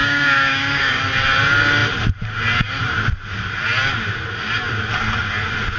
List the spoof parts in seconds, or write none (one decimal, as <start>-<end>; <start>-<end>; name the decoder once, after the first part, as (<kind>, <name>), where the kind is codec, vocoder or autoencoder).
0.0-1.0 (codec, DAC)